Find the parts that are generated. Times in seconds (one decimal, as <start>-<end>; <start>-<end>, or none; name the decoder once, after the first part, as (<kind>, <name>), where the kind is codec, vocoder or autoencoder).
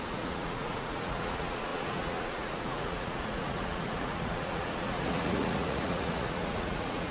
0.0-7.1 (vocoder, Vocos)